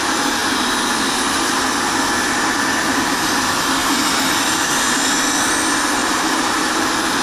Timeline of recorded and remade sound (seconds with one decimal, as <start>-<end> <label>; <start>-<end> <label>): 0.0-3.8 recorded; 3.8-5.2 remade; 5.2-6.0 recorded; 6.0-6.8 remade; 6.8-7.2 recorded